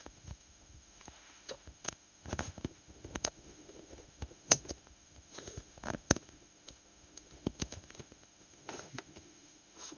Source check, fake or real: fake